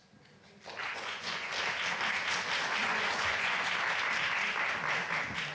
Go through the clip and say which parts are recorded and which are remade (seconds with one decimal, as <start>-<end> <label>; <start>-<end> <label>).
0.0-0.8 recorded; 0.8-1.5 remade; 1.5-2.8 recorded; 2.8-3.6 remade; 3.6-5.5 recorded